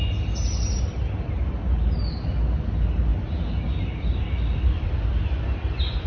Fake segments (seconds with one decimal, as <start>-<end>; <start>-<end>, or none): none